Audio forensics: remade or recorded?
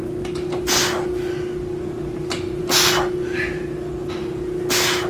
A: recorded